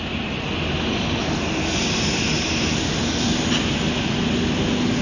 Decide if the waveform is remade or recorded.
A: recorded